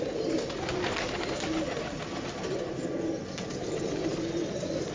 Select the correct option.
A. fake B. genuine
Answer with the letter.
B